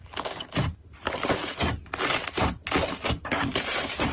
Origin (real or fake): real